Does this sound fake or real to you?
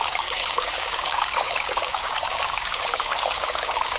fake